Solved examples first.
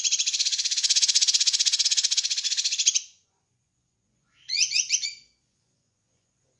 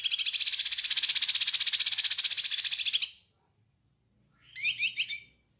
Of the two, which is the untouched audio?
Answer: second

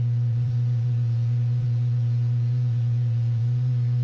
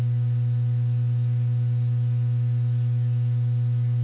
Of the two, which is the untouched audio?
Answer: second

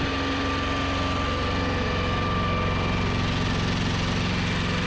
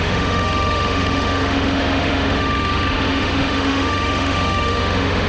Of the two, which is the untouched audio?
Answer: first